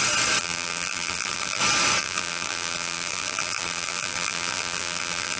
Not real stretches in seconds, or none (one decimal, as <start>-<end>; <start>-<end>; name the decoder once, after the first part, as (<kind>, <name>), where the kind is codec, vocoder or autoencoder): 0.4-1.6 (vocoder, BigVGAN v2); 2.0-5.4